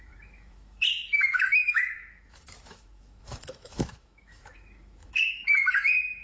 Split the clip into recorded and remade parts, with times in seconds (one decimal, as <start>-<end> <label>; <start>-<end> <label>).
0.0-6.2 remade